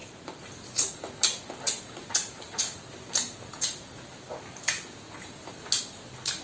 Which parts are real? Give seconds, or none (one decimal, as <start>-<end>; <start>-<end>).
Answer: 0.9-2.0; 5.8-6.4